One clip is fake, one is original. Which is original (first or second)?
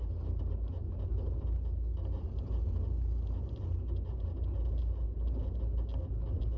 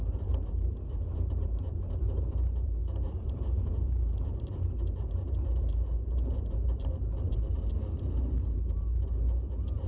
first